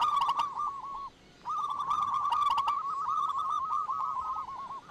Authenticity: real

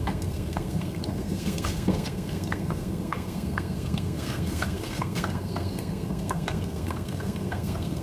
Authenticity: fake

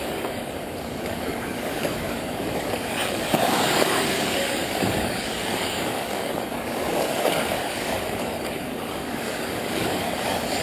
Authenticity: fake